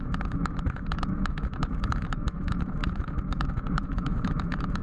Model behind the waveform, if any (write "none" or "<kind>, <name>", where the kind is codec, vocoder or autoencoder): autoencoder, DAC-VAE